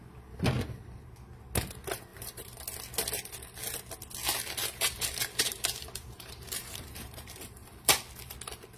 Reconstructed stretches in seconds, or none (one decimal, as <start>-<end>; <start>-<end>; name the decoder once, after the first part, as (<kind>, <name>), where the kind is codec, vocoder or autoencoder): 2.1-2.6 (vocoder, BigVGAN v2); 4.6-7.9